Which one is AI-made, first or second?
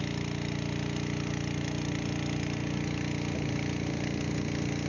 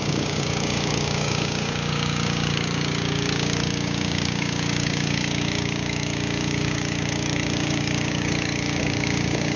second